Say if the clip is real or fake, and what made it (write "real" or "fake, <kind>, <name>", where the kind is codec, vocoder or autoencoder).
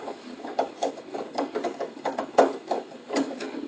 fake, codec, DAC